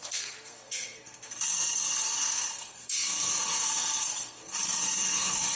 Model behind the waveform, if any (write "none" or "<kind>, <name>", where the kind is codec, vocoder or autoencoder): codec, SNAC